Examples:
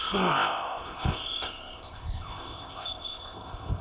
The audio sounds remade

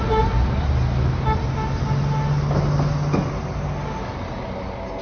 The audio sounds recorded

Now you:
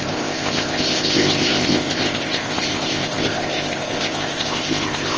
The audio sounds remade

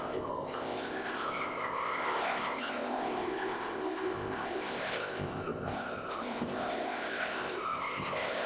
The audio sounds remade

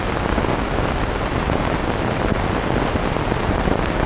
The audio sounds recorded